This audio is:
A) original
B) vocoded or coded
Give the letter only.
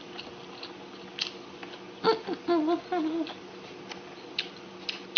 A